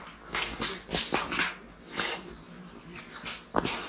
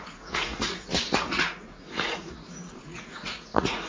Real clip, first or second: first